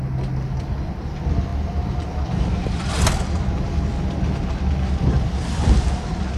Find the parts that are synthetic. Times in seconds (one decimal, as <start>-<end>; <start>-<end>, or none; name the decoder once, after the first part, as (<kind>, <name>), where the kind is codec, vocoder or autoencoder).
1.5-2.1 (vocoder, BigVGAN v2)

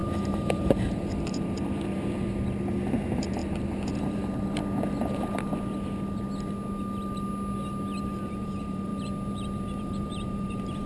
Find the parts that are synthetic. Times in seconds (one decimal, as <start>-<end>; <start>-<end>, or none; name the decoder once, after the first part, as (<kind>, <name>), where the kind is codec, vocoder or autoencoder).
0.0-3.4 (vocoder, BigVGAN v2); 4.0-4.6; 8.3-8.9; 9.8-10.9

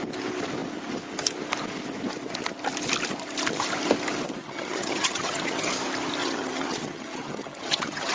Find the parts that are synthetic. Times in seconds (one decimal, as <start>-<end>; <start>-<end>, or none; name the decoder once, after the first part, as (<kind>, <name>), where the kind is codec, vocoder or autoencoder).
4.4-5.7 (vocoder, HiFi-GAN); 6.2-8.1

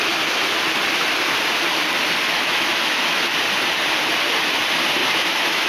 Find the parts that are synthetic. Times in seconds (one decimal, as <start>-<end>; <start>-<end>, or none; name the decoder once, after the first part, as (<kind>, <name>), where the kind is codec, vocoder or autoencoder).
2.2-3.3 (autoencoder, DAC-VAE); 5.0-5.7

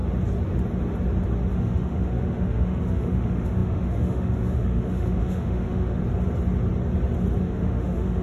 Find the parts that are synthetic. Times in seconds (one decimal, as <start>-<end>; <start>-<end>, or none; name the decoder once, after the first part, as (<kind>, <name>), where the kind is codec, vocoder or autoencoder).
1.5-6.0 (autoencoder, DAC-VAE); 7.4-8.2

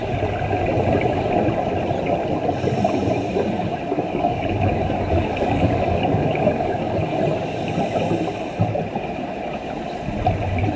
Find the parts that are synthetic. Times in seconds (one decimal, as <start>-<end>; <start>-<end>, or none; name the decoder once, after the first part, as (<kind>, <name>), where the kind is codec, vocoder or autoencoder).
3.9-7.2 (codec, DAC)

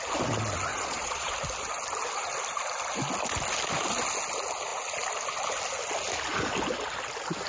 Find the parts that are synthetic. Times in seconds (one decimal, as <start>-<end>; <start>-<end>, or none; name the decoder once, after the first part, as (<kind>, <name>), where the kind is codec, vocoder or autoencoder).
0.7-1.3 (vocoder, Vocos)

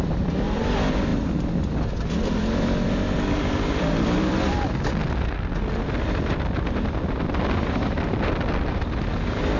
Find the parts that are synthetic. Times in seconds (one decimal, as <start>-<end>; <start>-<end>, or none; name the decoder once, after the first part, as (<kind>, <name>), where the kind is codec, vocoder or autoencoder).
0.0-1.1 (vocoder, BigVGAN v2); 3.5-9.6